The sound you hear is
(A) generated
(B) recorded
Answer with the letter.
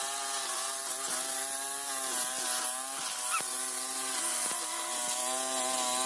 B